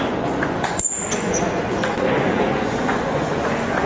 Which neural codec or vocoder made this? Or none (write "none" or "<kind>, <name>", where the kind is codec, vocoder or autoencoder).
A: vocoder, Vocos